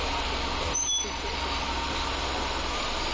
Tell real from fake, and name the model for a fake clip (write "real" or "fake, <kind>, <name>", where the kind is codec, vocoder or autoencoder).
real